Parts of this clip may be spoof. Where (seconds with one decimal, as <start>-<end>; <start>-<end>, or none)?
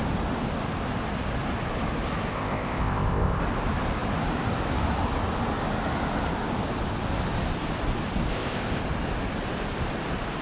2.3-3.4; 8.3-8.8